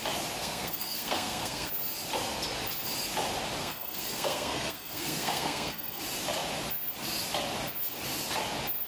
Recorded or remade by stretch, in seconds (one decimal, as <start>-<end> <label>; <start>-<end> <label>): 0.0-0.4 recorded; 0.4-1.7 remade; 1.7-3.6 recorded; 3.6-6.0 remade; 6.0-8.9 recorded